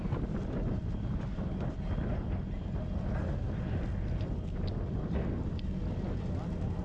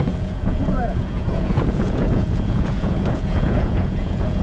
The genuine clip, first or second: first